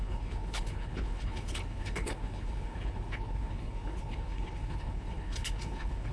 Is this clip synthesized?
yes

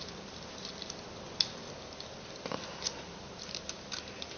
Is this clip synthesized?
no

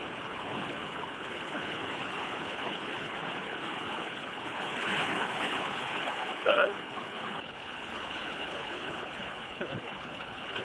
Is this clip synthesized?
yes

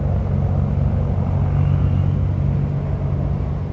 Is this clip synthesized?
no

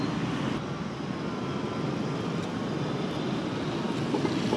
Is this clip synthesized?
no